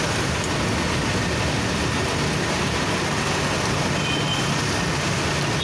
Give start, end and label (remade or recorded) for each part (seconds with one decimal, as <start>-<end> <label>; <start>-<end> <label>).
0.0-5.6 recorded